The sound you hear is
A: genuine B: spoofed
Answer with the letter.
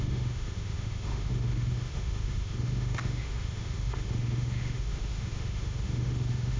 B